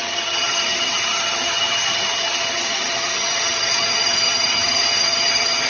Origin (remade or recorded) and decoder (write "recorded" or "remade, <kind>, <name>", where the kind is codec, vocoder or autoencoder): remade, vocoder, HiFi-GAN